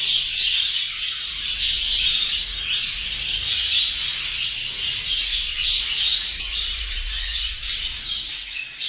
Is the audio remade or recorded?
remade